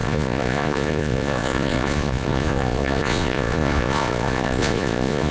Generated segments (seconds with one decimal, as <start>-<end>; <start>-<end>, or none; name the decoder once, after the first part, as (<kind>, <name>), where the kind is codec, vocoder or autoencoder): 0.0-5.3 (vocoder, Vocos)